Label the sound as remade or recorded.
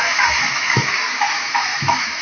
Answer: remade